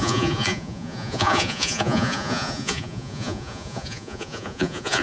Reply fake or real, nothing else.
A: fake